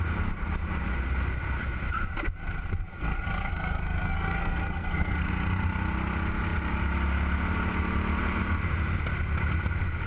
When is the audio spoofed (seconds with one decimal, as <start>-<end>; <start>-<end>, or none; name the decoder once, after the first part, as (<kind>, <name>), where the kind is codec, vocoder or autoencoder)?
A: 2.9-5.3 (codec, SNAC)